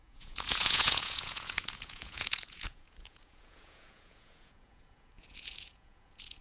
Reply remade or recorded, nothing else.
remade